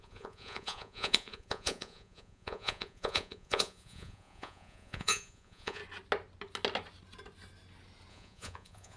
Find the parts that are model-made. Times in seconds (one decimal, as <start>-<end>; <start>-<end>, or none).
0.0-5.8; 8.1-9.0